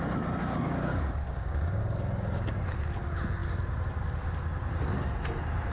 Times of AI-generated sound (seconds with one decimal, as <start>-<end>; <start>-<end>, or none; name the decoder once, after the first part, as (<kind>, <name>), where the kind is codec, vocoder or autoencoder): 0.4-1.8 (codec, DAC)